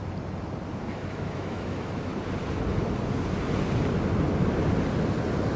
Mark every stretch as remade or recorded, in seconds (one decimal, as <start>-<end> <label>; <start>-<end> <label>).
0.0-1.1 recorded; 1.1-2.1 remade; 2.1-5.6 recorded